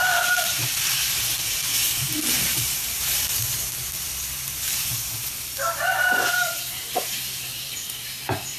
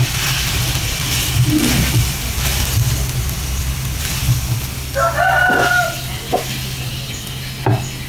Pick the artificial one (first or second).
first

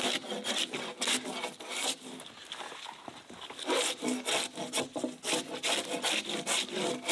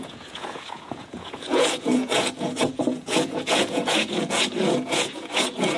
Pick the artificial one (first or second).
second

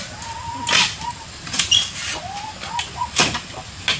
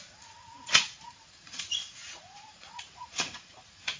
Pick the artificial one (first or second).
second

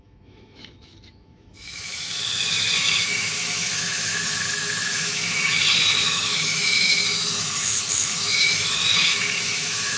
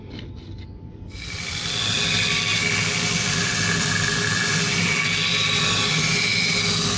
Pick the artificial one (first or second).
first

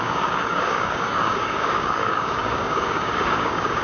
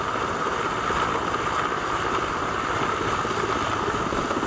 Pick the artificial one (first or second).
first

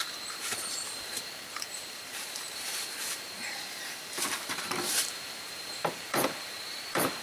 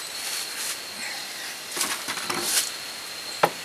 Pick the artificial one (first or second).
first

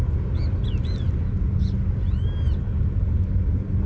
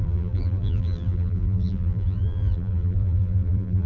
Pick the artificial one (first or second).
second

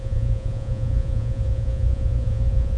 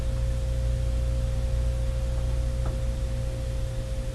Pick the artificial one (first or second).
first